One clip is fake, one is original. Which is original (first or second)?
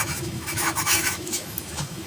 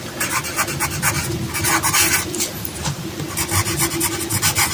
second